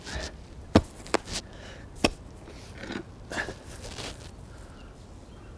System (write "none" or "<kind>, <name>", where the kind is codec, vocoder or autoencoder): none